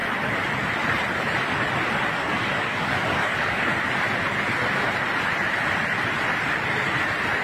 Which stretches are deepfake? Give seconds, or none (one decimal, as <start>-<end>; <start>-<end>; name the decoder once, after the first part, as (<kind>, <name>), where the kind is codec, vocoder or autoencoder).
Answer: 2.1-3.7 (codec, DAC)